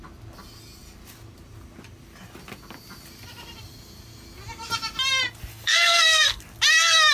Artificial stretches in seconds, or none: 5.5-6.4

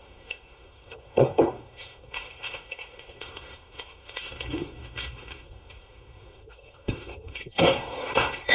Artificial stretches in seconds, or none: 0.0-8.5

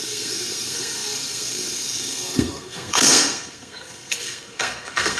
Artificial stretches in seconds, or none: 0.0-5.2

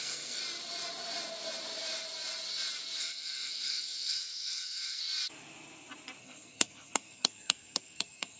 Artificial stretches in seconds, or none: 0.0-0.4; 3.0-5.0; 6.2-8.4

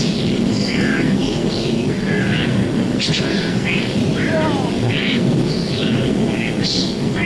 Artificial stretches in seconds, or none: 0.0-4.0; 4.7-7.2

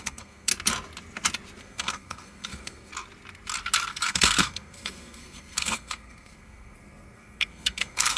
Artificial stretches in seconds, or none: 0.0-0.5; 1.6-2.9; 3.9-8.2

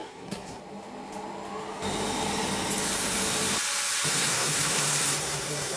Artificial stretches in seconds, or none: 0.0-0.6; 4.1-5.8